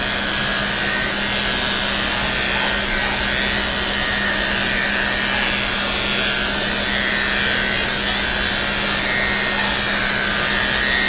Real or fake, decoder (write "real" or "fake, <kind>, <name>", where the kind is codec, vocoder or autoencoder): real